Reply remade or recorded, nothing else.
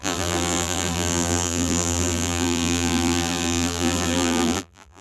remade